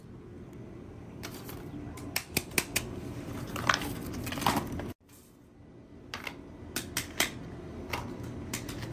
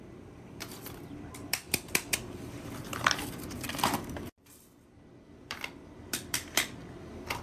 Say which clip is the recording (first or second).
first